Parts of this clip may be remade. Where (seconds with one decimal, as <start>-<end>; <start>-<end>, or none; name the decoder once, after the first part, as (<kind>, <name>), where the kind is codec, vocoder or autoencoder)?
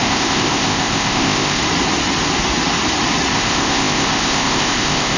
0.0-1.6 (codec, ZipCodec); 3.3-5.2